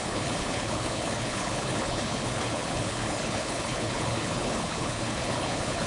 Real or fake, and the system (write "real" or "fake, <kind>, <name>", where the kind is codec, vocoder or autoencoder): fake, codec, HILCodec